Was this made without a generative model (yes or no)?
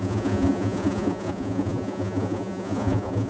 no